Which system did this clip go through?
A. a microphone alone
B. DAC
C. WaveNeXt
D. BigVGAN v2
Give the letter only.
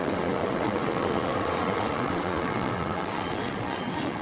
C